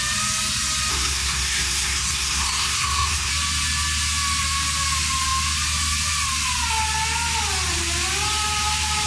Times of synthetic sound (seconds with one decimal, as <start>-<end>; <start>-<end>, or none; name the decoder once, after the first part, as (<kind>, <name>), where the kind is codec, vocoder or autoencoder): 0.9-3.3 (codec, SNAC)